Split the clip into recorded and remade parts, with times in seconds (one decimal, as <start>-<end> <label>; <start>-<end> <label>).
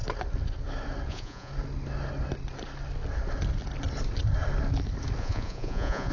0.0-1.1 recorded; 1.1-1.5 remade; 1.5-5.2 recorded; 5.2-6.1 remade